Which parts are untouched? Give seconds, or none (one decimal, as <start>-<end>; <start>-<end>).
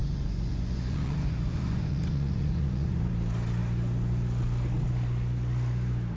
3.1-6.2